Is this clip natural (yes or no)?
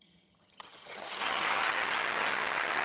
no